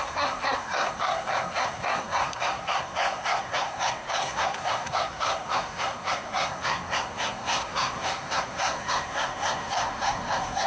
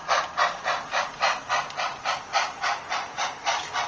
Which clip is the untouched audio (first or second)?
second